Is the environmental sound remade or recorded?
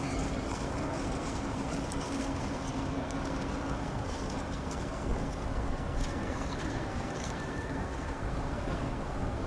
remade